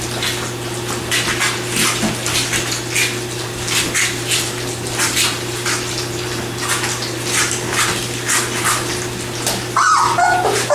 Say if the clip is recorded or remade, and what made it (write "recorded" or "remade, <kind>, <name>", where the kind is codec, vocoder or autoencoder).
recorded